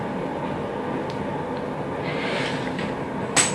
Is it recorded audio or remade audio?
recorded